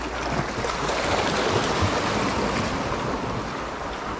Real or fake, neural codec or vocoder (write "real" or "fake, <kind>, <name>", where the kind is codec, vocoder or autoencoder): real